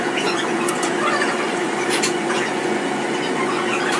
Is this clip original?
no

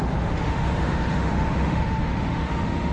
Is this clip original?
no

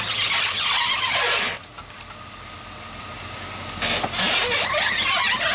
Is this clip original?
yes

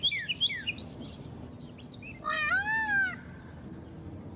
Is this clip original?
yes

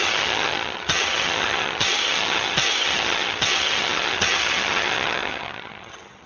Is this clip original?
no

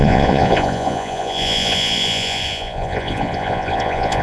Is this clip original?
no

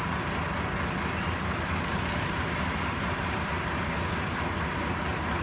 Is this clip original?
yes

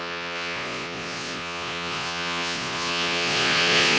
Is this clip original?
no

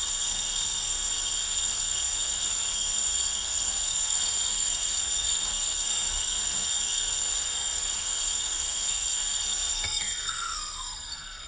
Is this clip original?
no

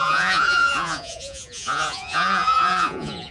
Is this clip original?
no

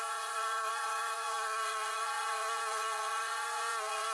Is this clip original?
no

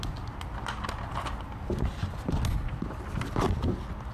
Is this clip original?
yes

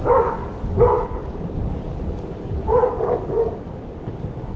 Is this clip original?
no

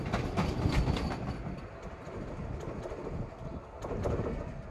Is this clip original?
yes